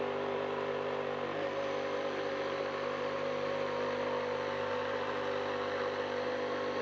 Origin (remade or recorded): remade